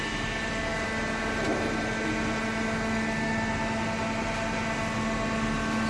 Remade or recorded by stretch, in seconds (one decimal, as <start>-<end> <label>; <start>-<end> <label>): 0.0-5.9 recorded